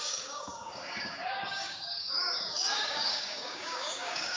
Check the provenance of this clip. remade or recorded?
remade